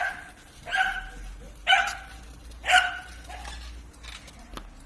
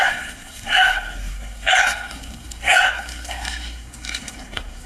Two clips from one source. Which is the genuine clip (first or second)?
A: first